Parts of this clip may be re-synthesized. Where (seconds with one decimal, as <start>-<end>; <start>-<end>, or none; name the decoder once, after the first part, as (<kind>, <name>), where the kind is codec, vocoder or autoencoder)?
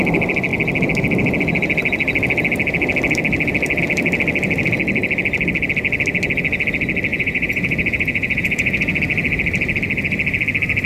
7.1-9.0 (vocoder, Vocos)